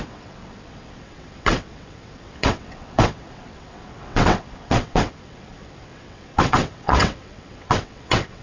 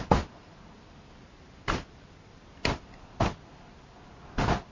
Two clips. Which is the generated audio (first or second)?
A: first